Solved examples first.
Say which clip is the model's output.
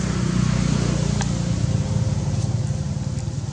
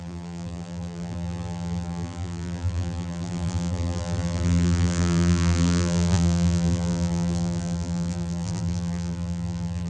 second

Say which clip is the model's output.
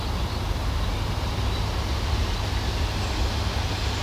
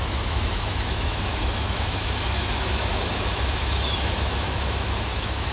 second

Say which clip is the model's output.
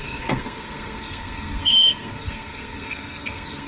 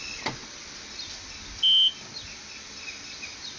first